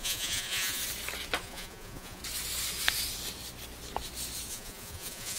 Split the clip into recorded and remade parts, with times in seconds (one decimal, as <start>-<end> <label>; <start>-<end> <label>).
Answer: 0.0-0.8 remade; 0.8-1.4 recorded; 1.4-2.2 remade; 2.2-4.5 recorded; 4.5-5.4 remade

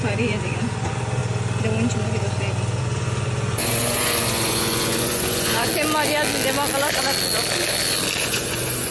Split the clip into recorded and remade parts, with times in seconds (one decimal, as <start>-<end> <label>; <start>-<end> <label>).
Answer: 0.0-1.2 remade; 1.2-2.8 recorded; 2.8-5.7 remade; 5.7-8.2 recorded; 8.2-8.9 remade

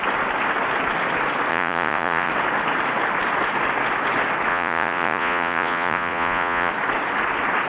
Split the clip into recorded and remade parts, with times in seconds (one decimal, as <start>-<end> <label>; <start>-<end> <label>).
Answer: 0.0-1.5 recorded; 1.5-2.3 remade; 2.3-4.5 recorded; 4.5-6.7 remade; 6.7-7.7 recorded